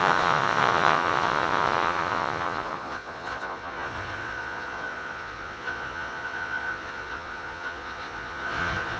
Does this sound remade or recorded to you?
remade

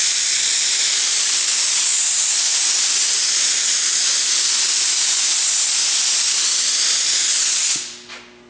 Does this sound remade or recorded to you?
recorded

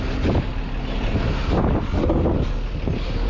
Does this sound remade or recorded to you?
recorded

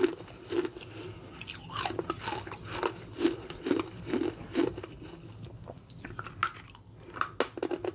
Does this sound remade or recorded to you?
recorded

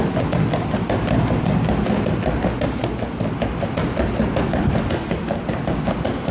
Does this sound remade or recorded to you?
recorded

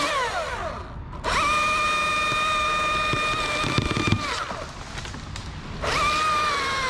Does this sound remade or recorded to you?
recorded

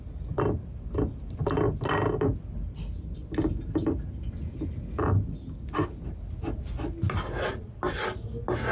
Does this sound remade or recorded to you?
recorded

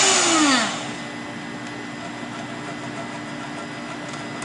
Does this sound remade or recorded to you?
recorded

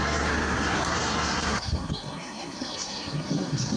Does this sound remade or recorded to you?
remade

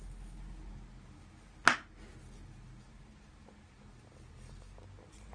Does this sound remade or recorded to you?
recorded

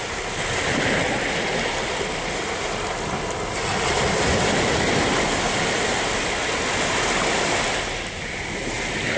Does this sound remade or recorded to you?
recorded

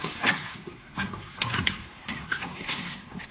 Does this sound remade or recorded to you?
remade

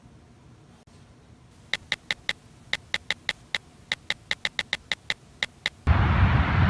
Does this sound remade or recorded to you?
recorded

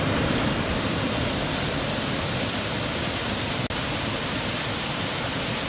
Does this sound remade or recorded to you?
recorded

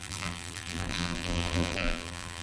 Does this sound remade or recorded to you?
remade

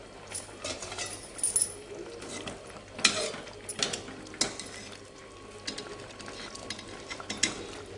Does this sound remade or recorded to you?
recorded